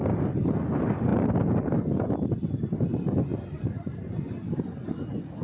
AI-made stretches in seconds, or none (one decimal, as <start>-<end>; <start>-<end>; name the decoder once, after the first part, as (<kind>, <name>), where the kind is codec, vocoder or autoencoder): none